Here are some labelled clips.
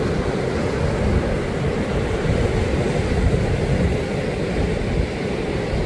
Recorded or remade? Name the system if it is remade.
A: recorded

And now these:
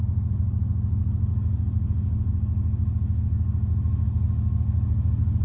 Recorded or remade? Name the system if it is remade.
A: recorded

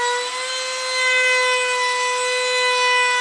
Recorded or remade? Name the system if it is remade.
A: recorded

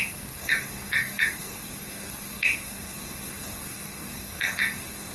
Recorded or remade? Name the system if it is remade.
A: remade, codec, SNAC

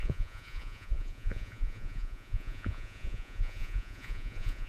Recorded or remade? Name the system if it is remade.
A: remade, vocoder, Vocos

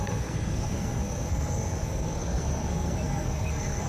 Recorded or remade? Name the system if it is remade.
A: remade, codec, SNAC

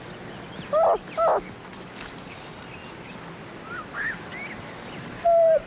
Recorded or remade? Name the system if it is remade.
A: recorded